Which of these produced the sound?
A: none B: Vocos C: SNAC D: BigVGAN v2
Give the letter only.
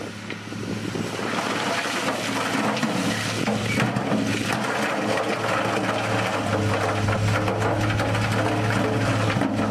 A